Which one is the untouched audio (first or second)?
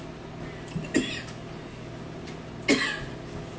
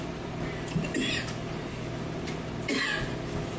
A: first